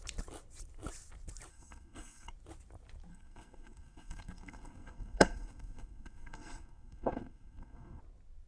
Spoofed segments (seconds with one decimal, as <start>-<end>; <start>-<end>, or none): 1.5-2.3; 3.1-8.0